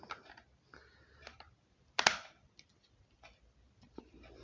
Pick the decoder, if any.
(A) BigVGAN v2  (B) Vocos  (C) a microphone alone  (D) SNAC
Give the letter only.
C